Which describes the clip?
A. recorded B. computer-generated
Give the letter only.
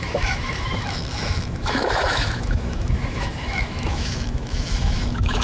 B